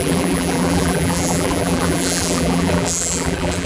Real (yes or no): no